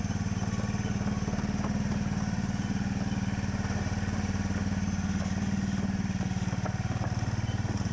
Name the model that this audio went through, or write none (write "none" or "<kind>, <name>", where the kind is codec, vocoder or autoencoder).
none